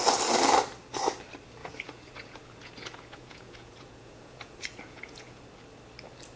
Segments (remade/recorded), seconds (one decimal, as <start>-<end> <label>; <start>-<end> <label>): 0.0-1.6 recorded; 1.6-5.4 remade; 5.4-6.4 recorded